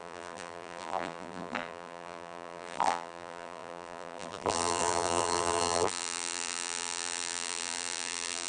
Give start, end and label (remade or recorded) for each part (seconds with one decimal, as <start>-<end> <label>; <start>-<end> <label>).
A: 0.0-8.5 remade